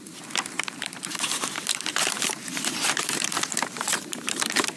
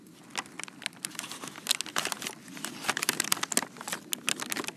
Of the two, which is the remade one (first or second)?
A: first